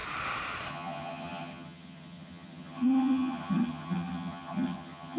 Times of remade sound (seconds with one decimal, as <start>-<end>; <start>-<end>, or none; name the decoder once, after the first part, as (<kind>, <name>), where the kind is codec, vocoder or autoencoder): 0.7-5.2 (vocoder, HiFi-GAN)